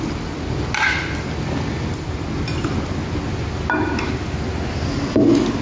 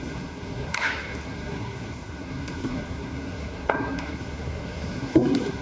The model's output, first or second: second